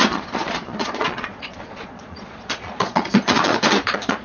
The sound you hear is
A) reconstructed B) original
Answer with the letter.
A